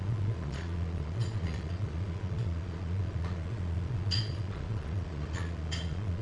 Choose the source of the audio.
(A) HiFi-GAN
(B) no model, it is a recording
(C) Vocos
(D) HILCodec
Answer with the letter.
C